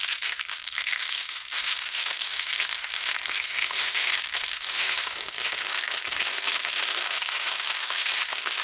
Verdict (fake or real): fake